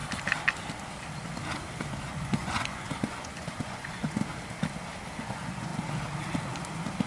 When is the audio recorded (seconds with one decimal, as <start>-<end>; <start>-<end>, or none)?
0.0-2.1; 4.2-5.2; 5.7-7.1